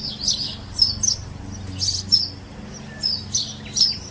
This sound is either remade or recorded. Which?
recorded